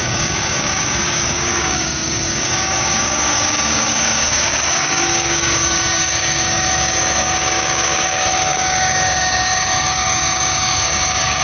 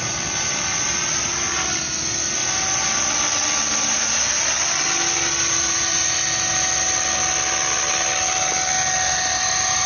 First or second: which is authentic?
second